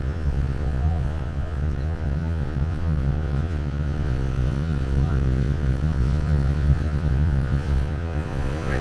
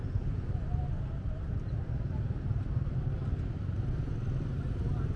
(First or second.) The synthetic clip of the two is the first